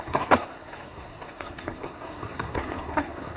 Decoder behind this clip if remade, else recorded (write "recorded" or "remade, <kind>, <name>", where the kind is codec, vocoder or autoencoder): remade, codec, SNAC